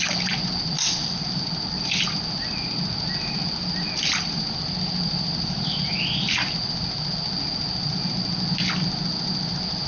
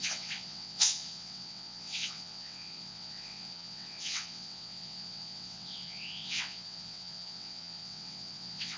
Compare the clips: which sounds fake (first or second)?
second